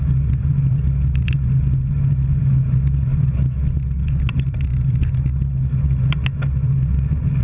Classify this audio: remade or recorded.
recorded